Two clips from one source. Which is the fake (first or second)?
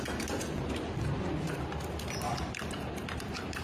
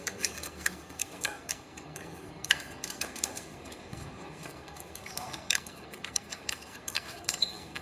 second